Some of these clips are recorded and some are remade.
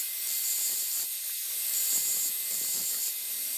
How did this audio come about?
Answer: remade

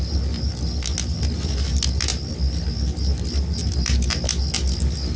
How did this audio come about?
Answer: recorded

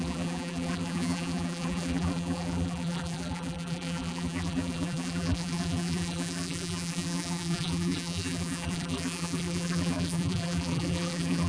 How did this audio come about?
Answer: remade